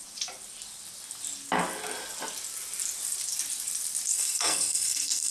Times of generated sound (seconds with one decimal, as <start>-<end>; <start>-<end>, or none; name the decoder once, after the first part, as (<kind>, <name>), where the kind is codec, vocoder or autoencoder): 4.1-5.3 (codec, SNAC)